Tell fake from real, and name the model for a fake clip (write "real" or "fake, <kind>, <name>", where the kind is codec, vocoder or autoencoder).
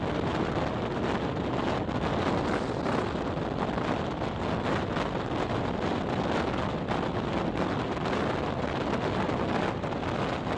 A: real